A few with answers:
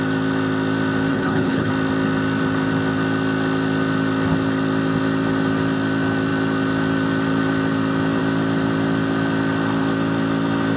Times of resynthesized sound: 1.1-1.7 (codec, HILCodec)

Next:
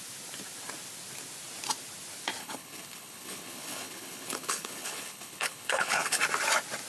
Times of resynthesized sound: 2.4-6.2 (codec, HILCodec)

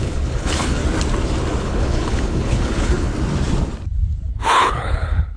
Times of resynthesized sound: 0.0-0.8 (codec, HILCodec); 1.6-3.1; 4.3-5.4

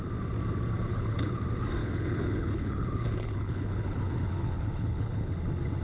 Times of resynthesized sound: 0.9-1.4 (codec, HILCodec); 1.8-5.3

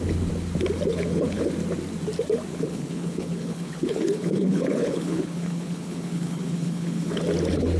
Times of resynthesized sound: 0.9-1.5 (codec, HILCodec); 2.5-7.2